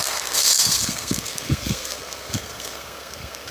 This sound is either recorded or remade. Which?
remade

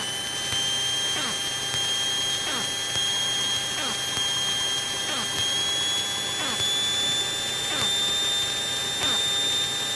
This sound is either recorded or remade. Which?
recorded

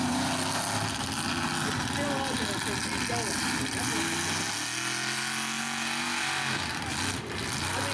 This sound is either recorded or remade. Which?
recorded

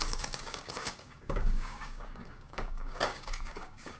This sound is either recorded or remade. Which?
remade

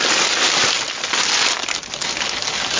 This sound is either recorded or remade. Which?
recorded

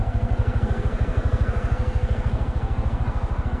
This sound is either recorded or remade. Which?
remade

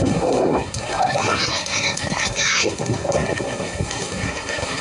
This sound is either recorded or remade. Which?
remade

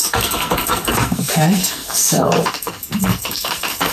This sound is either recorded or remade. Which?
remade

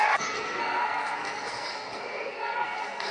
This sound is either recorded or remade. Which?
remade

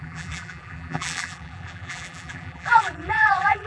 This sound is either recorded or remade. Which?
remade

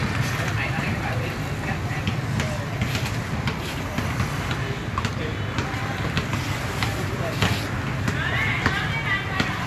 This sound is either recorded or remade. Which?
recorded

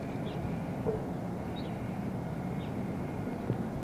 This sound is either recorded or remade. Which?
recorded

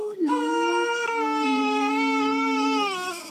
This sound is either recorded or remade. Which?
remade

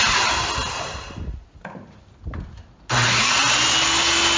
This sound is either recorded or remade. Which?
recorded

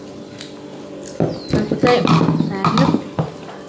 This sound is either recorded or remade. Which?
recorded